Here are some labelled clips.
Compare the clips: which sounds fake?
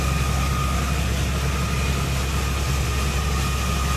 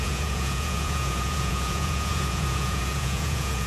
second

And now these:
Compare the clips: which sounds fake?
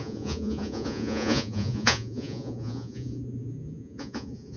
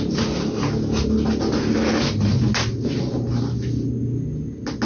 first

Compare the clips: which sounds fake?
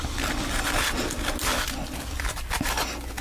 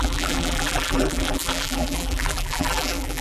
second